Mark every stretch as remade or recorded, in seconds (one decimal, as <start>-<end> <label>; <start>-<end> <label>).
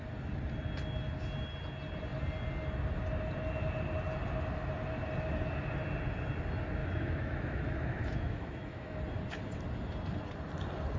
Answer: 0.0-6.8 recorded; 6.8-9.0 remade; 9.0-11.0 recorded